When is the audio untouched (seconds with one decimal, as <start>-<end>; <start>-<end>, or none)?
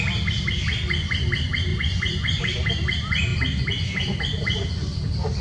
0.0-1.7; 2.4-5.4